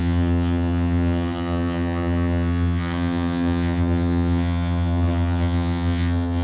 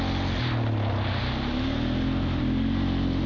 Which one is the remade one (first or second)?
first